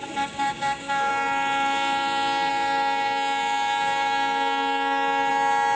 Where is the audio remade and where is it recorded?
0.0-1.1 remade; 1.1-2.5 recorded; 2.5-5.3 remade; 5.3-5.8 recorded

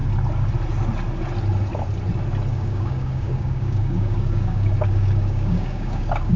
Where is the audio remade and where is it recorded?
0.0-2.5 recorded; 2.5-6.4 remade

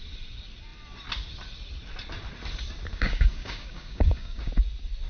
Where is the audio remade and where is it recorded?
0.0-2.9 recorded; 2.9-4.4 remade; 4.4-5.1 recorded

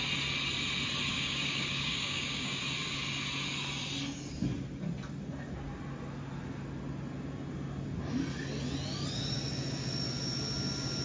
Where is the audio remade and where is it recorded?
0.0-1.1 recorded; 1.1-2.6 remade; 2.6-11.0 recorded

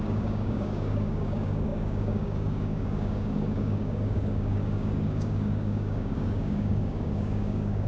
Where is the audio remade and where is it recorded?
0.0-7.9 remade

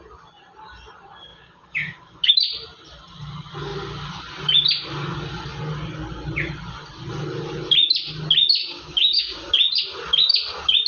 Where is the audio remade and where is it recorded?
0.0-1.3 recorded; 1.3-2.3 remade; 2.3-8.6 recorded; 8.6-9.5 remade; 9.5-10.9 recorded

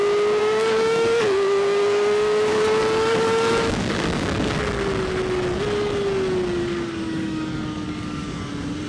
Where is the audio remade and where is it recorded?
0.0-0.4 recorded; 0.4-4.6 remade; 4.6-6.6 recorded; 6.6-8.5 remade; 8.5-8.9 recorded